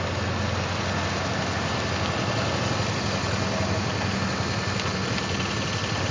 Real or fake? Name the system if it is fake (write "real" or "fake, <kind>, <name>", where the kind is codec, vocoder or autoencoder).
real